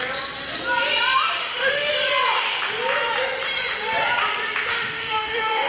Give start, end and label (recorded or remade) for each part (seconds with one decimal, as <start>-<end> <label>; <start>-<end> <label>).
0.0-1.4 recorded; 1.4-1.9 remade; 1.9-4.7 recorded; 4.7-5.7 remade